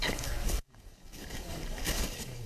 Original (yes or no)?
no